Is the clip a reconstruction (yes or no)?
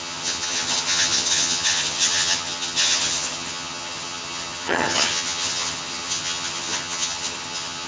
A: yes